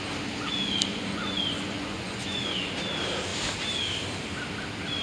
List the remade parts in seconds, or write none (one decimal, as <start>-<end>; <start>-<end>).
0.9-2.7